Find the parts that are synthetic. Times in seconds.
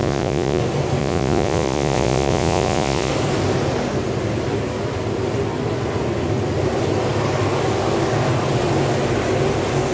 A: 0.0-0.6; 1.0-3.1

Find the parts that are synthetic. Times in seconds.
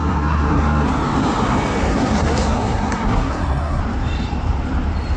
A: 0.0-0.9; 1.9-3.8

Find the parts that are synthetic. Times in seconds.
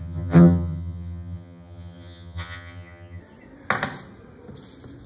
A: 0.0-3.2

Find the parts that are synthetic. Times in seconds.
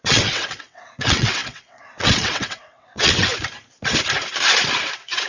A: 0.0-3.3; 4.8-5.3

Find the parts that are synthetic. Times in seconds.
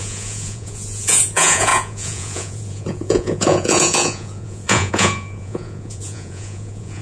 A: 0.0-7.0